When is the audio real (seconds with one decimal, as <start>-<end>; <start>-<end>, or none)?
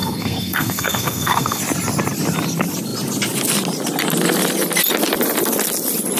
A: 1.6-6.2